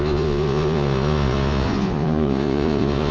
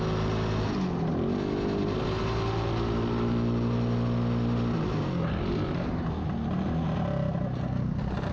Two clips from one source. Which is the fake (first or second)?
first